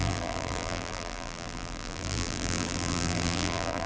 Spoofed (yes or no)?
yes